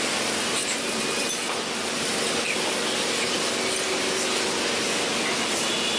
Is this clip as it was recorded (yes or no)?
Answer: yes